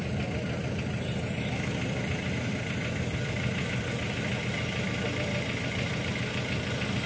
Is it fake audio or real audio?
real